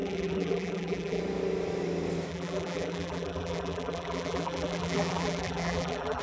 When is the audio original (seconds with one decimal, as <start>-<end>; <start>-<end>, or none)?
1.2-2.3